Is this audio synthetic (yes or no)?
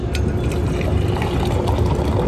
no